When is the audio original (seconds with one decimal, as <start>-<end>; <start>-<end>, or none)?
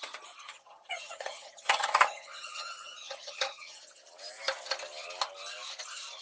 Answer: 0.0-0.5; 3.8-6.2